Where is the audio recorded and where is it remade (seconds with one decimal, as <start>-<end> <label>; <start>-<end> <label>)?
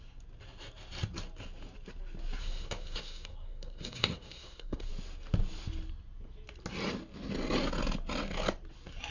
0.0-2.4 recorded; 2.4-4.9 remade; 4.9-9.1 recorded